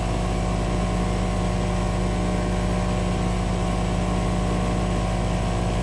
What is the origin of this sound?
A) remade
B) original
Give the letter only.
B